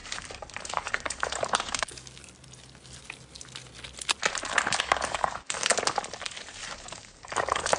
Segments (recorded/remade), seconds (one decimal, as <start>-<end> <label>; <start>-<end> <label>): 0.0-0.7 recorded; 0.7-2.2 remade; 2.2-4.8 recorded; 4.8-5.7 remade; 5.7-6.7 recorded; 6.7-7.8 remade